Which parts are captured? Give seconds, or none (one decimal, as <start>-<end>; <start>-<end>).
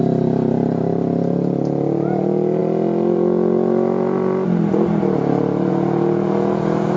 0.0-7.0